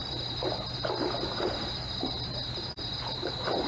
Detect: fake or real fake